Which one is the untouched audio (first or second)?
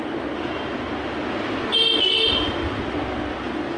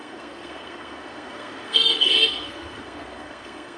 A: first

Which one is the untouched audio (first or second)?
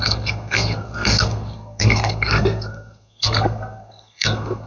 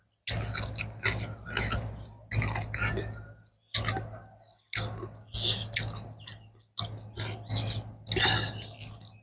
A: second